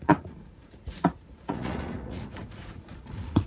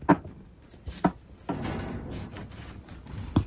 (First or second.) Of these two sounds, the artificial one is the first